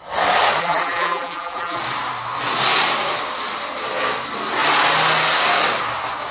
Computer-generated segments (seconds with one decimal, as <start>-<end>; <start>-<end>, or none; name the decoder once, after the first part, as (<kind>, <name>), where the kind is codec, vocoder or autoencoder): 0.6-1.8 (vocoder, BigVGAN v2)

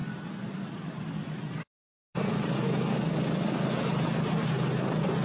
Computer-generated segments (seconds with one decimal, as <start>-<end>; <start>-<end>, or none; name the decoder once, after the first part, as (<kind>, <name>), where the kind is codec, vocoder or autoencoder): 0.0-1.0 (vocoder, BigVGAN v2)

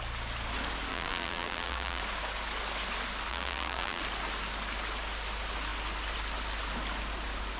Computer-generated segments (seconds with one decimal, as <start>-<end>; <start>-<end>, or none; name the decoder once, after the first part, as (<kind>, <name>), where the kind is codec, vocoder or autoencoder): 0.9-2.0 (vocoder, BigVGAN v2); 3.3-4.0

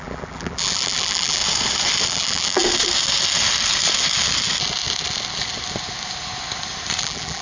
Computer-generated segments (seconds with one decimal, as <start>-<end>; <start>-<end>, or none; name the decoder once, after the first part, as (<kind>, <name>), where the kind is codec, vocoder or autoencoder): 0.0-1.4 (vocoder, BigVGAN v2); 2.1-2.6; 7.0-7.4

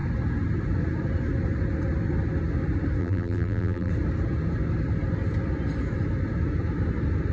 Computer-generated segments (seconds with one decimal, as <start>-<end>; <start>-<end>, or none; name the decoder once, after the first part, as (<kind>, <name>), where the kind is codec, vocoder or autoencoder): 3.0-3.9 (vocoder, BigVGAN v2)

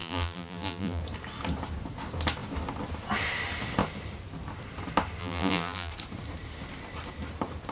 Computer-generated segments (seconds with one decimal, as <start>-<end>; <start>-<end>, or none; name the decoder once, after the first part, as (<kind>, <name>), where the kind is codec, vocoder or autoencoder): 0.0-1.0 (vocoder, BigVGAN v2); 5.2-5.9